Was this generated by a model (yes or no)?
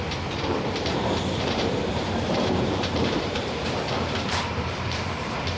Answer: yes